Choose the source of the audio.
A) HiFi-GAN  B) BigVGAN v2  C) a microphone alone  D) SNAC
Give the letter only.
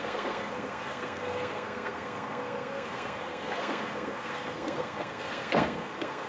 D